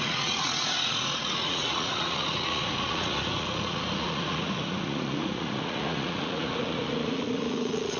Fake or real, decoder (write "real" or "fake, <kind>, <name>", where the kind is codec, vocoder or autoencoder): fake, vocoder, Vocos